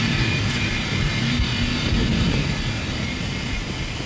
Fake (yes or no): no